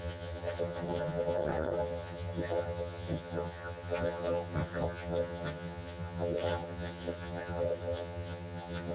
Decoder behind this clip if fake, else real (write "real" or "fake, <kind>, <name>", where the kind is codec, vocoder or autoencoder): fake, vocoder, HiFi-GAN